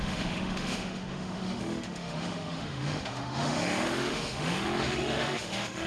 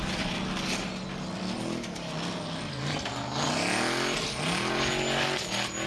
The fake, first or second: first